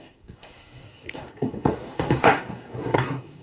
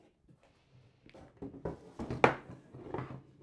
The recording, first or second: second